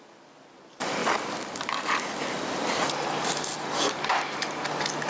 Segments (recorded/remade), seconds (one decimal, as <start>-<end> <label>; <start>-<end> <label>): 0.0-1.0 recorded; 1.0-1.6 remade; 1.6-5.1 recorded